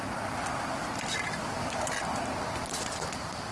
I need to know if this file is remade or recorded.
recorded